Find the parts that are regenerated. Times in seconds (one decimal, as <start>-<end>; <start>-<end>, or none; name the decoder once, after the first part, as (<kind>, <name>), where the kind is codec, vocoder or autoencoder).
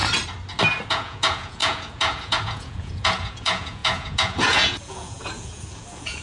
0.9-6.2 (vocoder, Vocos)